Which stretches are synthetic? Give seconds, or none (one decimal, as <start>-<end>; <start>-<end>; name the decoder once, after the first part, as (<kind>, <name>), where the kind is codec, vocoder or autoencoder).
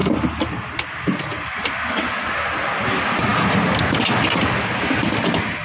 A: none